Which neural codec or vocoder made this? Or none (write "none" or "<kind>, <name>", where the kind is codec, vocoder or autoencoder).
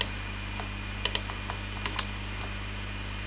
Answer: none